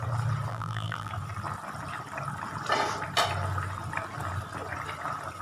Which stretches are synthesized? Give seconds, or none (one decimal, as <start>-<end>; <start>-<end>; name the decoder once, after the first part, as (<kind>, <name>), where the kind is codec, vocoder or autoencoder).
0.5-1.1 (vocoder, BigVGAN v2)